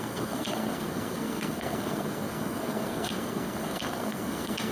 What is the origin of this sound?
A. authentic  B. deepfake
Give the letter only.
B